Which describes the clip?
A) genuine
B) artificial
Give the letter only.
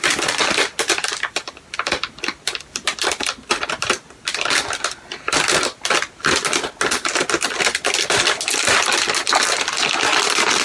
A